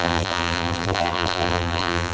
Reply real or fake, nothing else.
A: fake